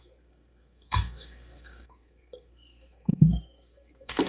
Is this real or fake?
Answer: fake